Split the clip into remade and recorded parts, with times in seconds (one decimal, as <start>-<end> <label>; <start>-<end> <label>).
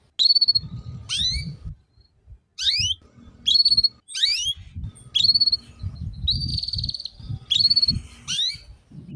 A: 0.0-1.0 recorded; 1.0-1.7 remade; 1.7-6.5 recorded; 6.5-8.5 remade; 8.5-9.2 recorded